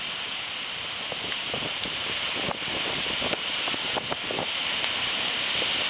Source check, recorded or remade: recorded